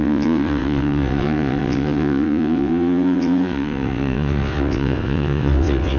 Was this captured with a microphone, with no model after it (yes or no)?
no